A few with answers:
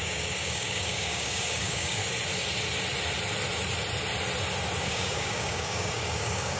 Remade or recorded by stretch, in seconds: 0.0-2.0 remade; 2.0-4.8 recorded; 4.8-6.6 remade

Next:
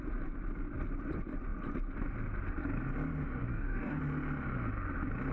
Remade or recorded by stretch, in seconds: 0.0-3.5 recorded; 3.5-4.0 remade; 4.0-5.3 recorded

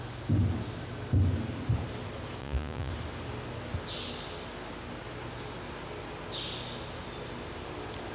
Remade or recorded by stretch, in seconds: 0.0-2.4 recorded; 2.4-2.9 remade; 2.9-8.1 recorded

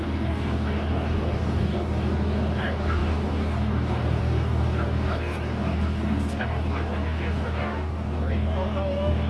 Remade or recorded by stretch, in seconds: 0.0-9.3 remade

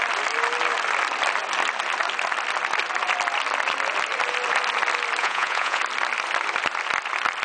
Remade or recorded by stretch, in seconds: 0.0-5.2 recorded; 5.2-5.8 remade; 5.8-7.4 recorded

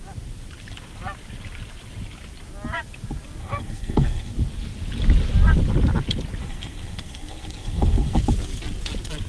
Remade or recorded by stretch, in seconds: 0.0-3.4 recorded; 3.4-4.3 remade; 4.3-6.4 recorded; 6.4-8.2 remade; 8.2-9.3 recorded

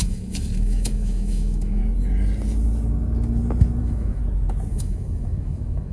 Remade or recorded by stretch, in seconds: 0.0-1.8 remade; 1.8-3.8 recorded; 3.8-4.2 remade; 4.2-4.7 recorded; 4.7-5.9 remade

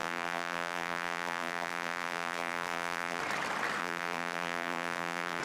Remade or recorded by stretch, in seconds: 0.0-3.2 remade; 3.2-3.8 recorded; 3.8-5.4 remade